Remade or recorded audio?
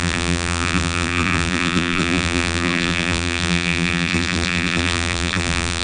remade